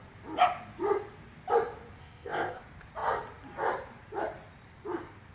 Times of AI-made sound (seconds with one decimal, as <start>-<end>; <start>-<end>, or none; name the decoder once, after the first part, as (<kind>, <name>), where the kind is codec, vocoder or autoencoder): 2.0-2.6 (codec, ZipCodec)